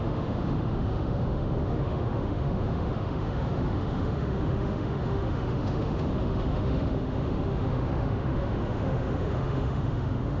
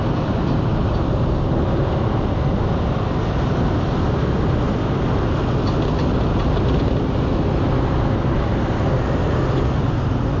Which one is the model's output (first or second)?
first